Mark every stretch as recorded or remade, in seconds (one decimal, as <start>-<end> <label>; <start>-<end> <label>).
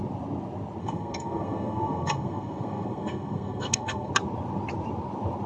0.0-0.8 recorded; 0.8-4.1 remade; 4.1-5.5 recorded